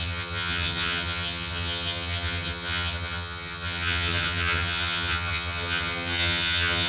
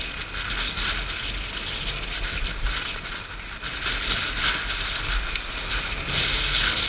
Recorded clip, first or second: second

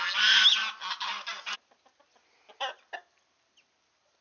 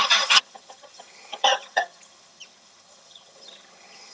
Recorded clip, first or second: first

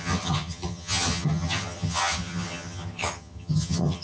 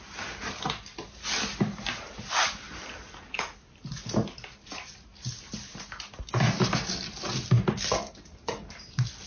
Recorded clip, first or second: second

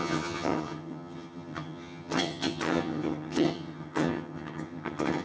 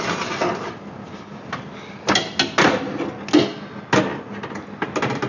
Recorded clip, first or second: second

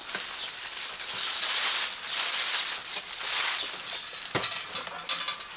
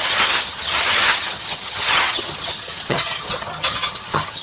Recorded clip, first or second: first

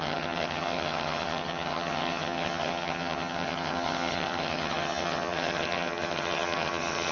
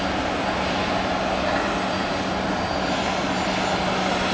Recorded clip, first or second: second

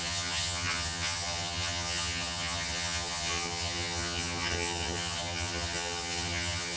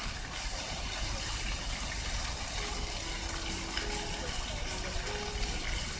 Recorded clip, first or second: second